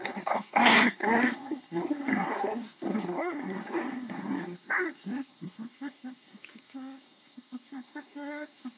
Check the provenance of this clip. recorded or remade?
remade